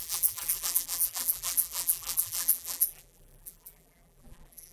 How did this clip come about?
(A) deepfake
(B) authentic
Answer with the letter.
A